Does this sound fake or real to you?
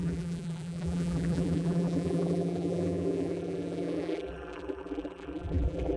fake